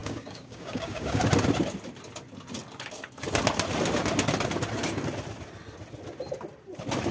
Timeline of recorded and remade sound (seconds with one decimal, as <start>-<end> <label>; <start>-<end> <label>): 0.0-1.2 remade; 1.2-7.1 recorded